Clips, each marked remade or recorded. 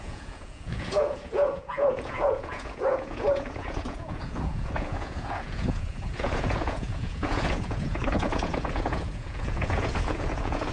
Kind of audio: remade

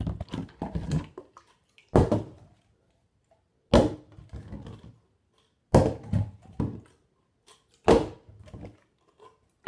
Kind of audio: recorded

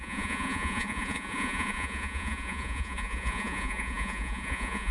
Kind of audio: remade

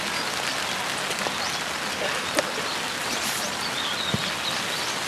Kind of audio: recorded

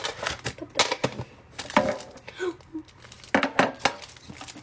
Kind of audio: recorded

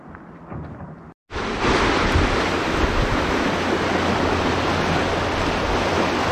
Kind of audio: recorded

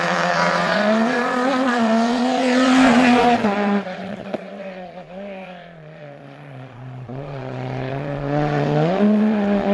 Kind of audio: remade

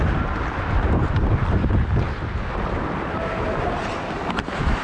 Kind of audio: recorded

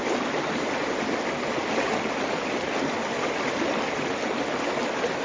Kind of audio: recorded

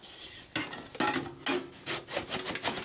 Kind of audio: recorded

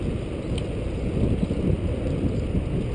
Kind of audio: recorded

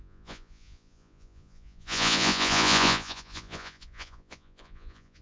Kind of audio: remade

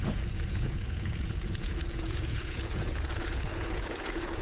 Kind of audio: remade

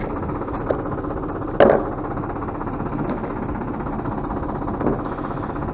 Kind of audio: recorded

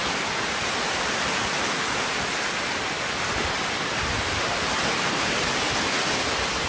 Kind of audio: recorded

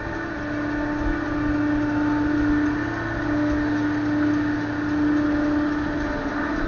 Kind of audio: recorded